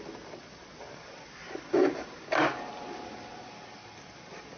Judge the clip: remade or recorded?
recorded